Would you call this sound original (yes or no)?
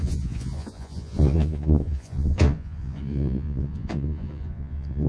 no